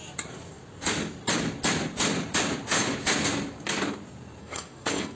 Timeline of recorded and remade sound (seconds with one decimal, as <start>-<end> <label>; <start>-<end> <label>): 0.0-4.4 recorded; 4.4-5.2 remade